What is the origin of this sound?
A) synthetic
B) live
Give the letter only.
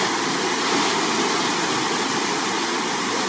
B